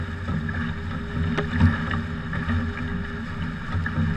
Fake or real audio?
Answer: real